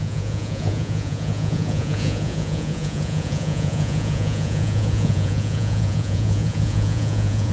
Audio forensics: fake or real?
fake